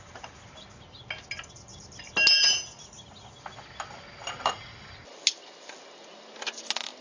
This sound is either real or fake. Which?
real